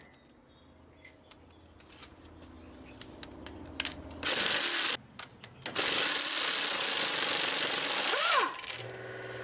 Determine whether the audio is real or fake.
real